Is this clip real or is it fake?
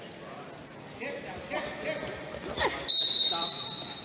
real